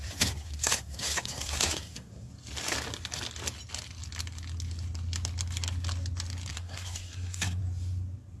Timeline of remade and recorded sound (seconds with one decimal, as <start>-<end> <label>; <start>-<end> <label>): 0.0-2.3 remade; 2.3-6.5 recorded; 6.5-7.6 remade; 7.6-8.4 recorded